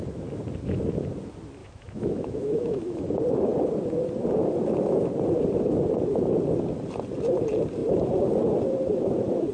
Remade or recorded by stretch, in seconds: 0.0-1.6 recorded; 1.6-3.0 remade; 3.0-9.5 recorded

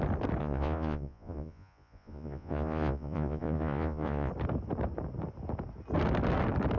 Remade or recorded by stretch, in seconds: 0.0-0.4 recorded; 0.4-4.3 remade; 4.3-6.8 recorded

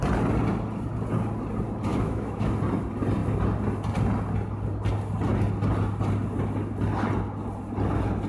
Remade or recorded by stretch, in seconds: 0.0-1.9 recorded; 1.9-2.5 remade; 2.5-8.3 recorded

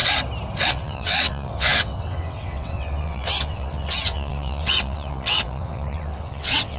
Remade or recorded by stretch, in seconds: 0.0-0.7 recorded; 0.7-6.8 remade